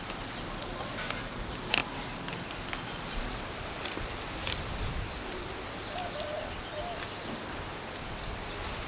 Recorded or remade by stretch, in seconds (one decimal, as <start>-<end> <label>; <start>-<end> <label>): 0.0-8.9 recorded